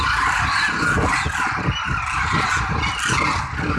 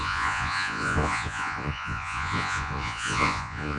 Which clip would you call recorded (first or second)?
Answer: first